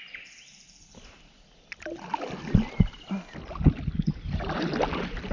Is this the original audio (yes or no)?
yes